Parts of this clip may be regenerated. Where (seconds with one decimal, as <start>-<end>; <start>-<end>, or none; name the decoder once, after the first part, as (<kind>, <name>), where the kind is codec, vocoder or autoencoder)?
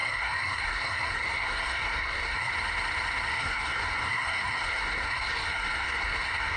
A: 0.0-2.5 (codec, SNAC); 3.3-6.6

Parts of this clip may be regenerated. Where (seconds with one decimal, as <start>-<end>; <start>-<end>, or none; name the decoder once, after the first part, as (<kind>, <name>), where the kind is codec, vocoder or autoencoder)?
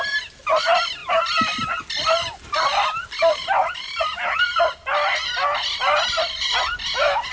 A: none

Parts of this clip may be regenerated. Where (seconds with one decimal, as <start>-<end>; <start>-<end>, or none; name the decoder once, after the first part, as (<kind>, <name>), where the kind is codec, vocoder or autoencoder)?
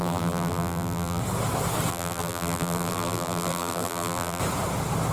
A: 0.0-1.2 (vocoder, BigVGAN v2); 1.9-4.4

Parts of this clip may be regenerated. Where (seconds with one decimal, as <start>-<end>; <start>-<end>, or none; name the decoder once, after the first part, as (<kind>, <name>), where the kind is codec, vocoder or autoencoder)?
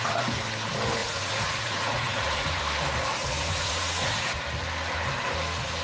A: 1.0-2.6 (vocoder, Vocos); 3.2-4.4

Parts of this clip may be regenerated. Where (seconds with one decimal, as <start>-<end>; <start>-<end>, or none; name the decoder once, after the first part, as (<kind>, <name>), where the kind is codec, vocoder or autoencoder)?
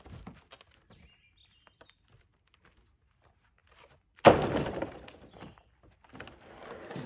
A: none